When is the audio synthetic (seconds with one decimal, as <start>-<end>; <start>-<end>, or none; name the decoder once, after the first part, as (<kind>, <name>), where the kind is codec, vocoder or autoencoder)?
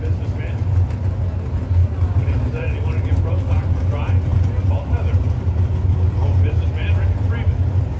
none